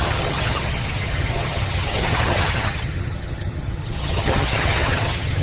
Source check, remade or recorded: remade